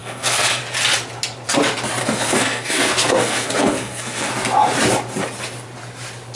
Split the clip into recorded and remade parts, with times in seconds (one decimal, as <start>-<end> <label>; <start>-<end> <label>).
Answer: 0.0-0.6 remade; 0.6-2.0 recorded; 2.0-4.3 remade; 4.3-6.4 recorded